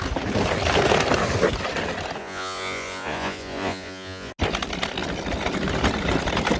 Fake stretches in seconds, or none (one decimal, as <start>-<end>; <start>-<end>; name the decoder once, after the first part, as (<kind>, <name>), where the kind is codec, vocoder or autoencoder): 2.2-4.3 (vocoder, Vocos)